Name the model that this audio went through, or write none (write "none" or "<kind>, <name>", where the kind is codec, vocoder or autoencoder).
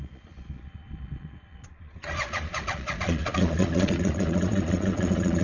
vocoder, Vocos